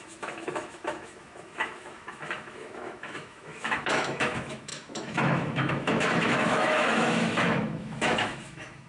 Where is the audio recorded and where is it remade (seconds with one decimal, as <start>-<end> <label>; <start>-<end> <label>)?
0.0-8.9 remade